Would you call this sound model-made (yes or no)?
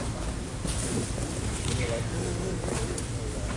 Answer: yes